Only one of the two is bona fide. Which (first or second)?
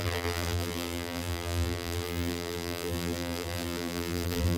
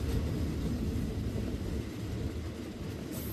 second